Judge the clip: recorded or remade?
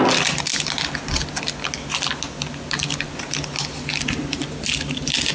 recorded